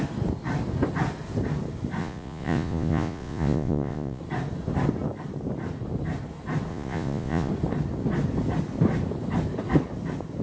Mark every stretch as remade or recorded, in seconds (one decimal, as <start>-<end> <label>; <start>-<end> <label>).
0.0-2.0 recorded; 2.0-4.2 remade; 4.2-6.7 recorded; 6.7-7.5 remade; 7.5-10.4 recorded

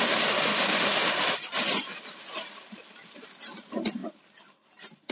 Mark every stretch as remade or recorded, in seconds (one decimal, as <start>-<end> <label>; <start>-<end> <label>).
0.0-5.1 recorded

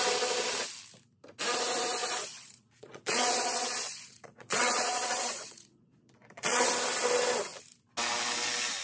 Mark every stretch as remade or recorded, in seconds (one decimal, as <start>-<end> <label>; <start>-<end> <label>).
0.0-2.0 recorded; 2.0-6.7 remade; 6.7-8.8 recorded

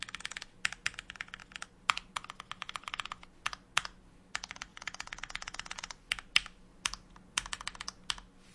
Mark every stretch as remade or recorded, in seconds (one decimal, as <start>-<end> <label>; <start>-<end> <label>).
0.0-4.7 recorded; 4.7-6.1 remade; 6.1-8.5 recorded

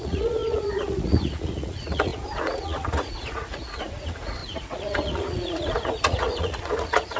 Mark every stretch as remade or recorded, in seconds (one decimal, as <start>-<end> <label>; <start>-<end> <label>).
0.0-7.2 remade

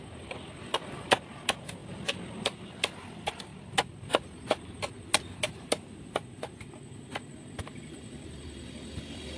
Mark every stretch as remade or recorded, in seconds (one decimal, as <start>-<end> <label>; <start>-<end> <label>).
0.0-9.4 recorded

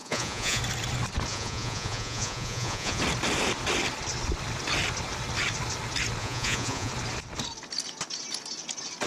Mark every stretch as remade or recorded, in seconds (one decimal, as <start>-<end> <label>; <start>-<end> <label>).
0.0-0.6 remade; 0.6-1.3 recorded; 1.3-3.0 remade; 3.0-6.2 recorded; 6.2-6.9 remade; 6.9-9.1 recorded